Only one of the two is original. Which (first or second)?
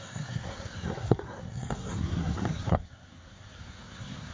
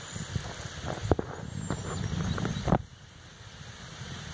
second